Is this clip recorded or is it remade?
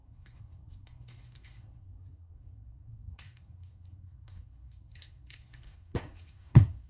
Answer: remade